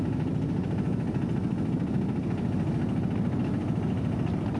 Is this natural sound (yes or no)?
yes